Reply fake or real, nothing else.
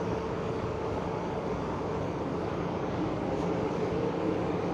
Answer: fake